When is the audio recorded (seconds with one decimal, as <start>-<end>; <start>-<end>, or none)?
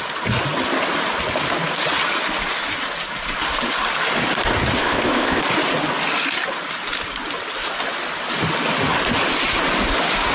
0.0-4.8; 5.4-10.3